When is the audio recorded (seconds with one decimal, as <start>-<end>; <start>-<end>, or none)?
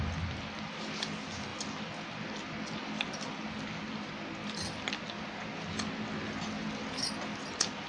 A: 0.0-7.9